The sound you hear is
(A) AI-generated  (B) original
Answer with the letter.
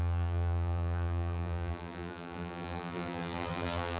A